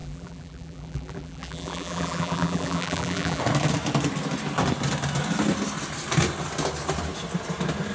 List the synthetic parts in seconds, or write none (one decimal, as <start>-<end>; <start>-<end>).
0.0-3.4